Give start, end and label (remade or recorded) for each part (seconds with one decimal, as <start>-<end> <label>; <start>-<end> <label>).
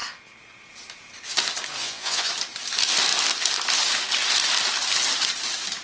0.0-1.8 recorded; 1.8-2.3 remade; 2.3-5.8 recorded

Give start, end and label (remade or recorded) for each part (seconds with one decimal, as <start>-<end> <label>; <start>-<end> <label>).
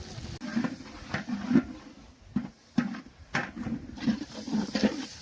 0.0-5.2 recorded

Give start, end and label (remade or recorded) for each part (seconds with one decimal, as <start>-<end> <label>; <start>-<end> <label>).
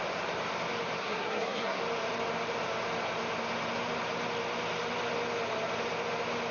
0.0-1.0 recorded; 1.0-1.8 remade; 1.8-6.5 recorded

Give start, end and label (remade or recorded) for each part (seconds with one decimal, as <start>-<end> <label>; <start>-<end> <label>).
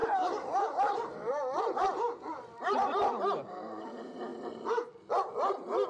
0.0-4.3 remade; 4.3-5.5 recorded; 5.5-5.9 remade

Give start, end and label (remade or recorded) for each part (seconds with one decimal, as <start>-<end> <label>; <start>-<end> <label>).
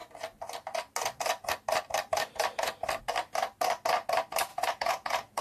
0.0-4.5 recorded; 4.5-5.4 remade